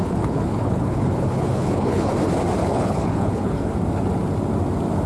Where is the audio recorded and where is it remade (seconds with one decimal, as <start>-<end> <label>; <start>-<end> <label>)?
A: 0.0-2.1 remade; 2.1-2.6 recorded; 2.6-3.7 remade; 3.7-5.1 recorded